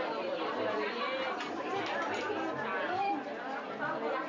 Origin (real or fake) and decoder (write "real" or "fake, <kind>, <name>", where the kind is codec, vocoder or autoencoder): real